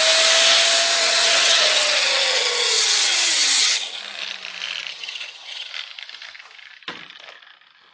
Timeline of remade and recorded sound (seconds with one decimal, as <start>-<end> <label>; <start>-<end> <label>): 0.0-1.0 recorded; 1.0-4.0 remade; 4.0-4.9 recorded; 4.9-5.7 remade; 5.7-7.9 recorded